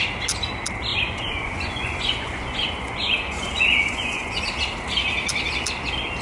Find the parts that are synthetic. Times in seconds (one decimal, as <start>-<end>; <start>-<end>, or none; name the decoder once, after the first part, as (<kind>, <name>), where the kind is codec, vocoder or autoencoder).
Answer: 0.9-4.4 (vocoder, Vocos)